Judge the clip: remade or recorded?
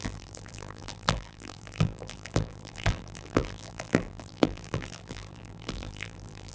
remade